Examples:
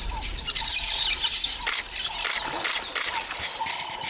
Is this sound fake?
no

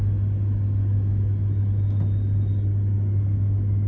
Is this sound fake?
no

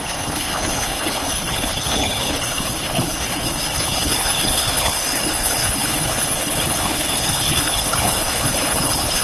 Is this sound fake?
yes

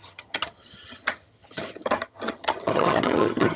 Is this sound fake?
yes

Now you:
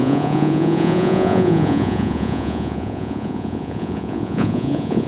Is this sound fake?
yes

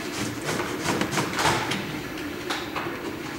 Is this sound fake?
no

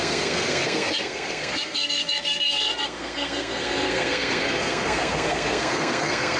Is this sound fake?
yes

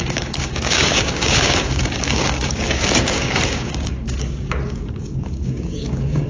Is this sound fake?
yes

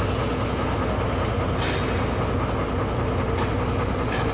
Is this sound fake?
no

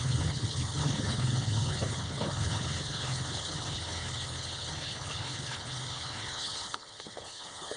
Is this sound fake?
yes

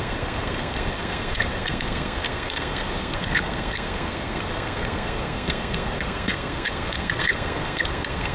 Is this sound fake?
yes